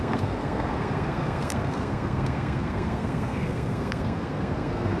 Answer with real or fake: fake